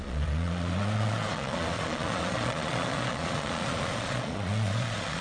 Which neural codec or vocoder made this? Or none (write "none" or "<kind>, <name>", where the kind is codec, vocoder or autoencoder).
vocoder, Vocos